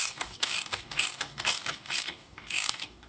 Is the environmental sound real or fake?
fake